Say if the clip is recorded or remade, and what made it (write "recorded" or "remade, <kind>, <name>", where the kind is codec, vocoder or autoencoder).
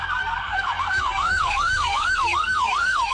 remade, codec, SNAC